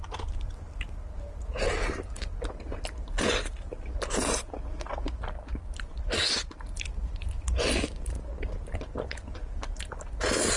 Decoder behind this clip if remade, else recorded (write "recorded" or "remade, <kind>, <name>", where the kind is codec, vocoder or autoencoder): recorded